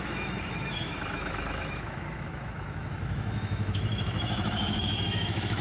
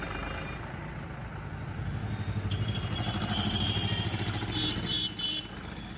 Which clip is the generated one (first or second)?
first